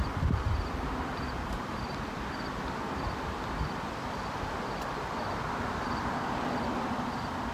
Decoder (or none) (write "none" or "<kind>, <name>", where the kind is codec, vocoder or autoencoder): none